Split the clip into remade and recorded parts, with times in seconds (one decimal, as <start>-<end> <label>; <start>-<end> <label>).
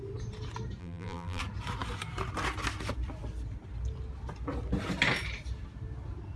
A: 0.0-0.8 recorded; 0.8-1.4 remade; 1.4-6.4 recorded